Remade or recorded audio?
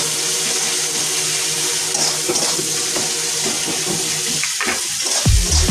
recorded